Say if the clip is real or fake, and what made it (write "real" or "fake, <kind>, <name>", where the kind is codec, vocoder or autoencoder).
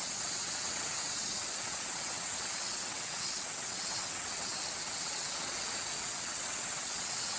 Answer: fake, vocoder, WaveNeXt